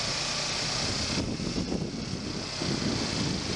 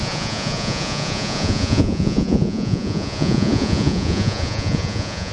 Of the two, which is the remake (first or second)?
second